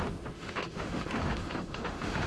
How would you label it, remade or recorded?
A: remade